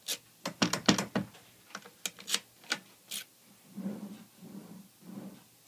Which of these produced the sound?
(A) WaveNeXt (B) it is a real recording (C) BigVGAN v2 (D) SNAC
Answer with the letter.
B